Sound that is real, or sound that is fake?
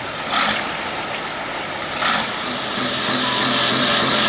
real